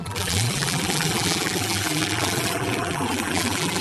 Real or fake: fake